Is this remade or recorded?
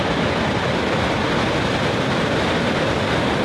recorded